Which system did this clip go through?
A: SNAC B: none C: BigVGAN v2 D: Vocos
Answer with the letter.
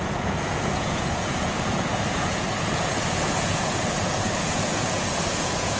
D